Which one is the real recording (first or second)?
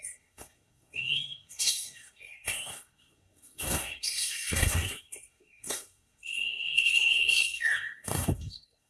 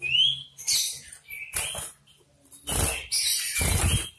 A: second